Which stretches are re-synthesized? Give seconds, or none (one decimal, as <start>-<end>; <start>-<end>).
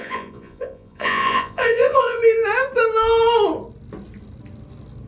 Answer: 0.0-2.2